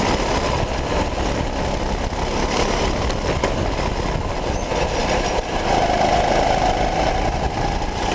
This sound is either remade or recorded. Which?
recorded